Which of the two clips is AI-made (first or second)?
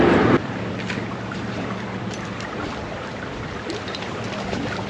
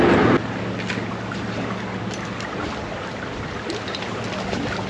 first